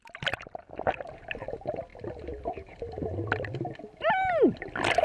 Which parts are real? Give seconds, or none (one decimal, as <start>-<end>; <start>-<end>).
0.0-5.0